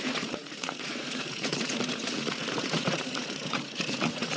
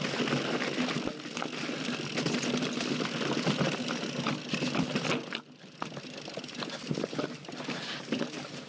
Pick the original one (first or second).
second